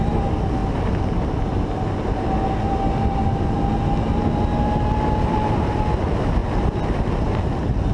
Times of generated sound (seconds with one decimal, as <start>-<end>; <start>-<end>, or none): none